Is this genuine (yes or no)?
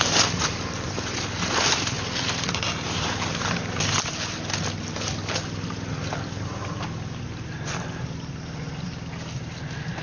yes